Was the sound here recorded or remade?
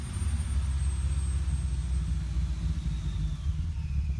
recorded